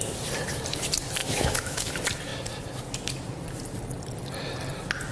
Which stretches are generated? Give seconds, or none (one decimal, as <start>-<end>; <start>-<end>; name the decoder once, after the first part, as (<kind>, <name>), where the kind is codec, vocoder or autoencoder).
1.2-1.9 (autoencoder, DAC-VAE)